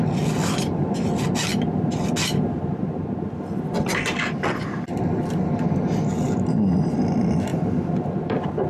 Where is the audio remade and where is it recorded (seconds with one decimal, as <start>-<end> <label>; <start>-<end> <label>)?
0.0-1.5 remade; 1.5-6.1 recorded; 6.1-8.7 remade